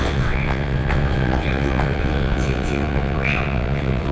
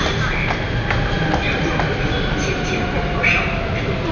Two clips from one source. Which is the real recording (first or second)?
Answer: second